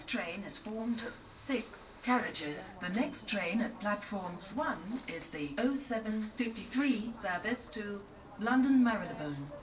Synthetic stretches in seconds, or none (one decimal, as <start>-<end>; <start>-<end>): 0.8-2.6; 6.1-7.0